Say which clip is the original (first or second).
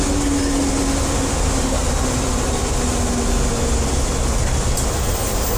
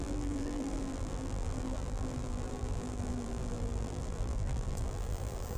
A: first